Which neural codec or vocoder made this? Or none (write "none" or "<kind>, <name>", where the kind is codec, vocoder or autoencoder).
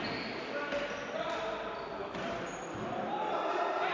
none